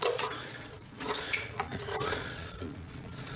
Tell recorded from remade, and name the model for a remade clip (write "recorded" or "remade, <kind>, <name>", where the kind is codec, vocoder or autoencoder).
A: remade, vocoder, Vocos